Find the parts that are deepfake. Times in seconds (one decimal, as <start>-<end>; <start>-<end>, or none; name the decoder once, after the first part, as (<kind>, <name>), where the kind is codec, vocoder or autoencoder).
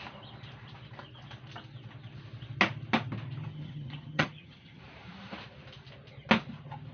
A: 3.5-4.8 (vocoder, HiFi-GAN)